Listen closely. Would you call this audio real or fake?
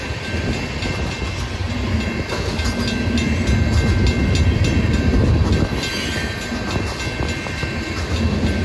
real